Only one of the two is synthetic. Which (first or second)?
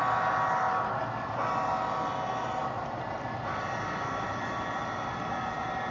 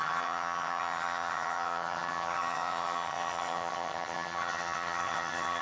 second